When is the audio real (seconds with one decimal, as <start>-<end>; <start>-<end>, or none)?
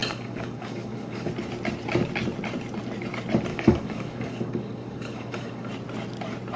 1.3-3.5; 5.7-6.6